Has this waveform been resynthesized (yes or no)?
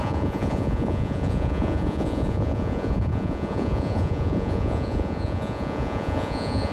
yes